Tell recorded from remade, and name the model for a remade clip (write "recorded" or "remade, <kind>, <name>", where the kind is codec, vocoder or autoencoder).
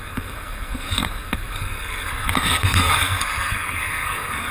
remade, codec, SNAC